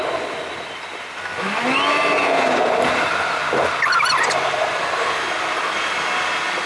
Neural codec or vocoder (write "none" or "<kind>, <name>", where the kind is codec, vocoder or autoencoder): none